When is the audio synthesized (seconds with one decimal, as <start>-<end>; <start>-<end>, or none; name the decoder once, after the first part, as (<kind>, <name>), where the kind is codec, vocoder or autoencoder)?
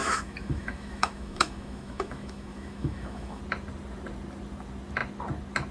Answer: 0.0-3.4 (autoencoder, DAC-VAE)